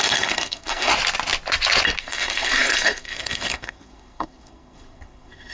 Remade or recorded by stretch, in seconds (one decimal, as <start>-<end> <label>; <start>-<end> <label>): 0.0-0.9 remade; 0.9-2.0 recorded; 2.0-5.5 remade